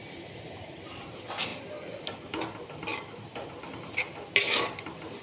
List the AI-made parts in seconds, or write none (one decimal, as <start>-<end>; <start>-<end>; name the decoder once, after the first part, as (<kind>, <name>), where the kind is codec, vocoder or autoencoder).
none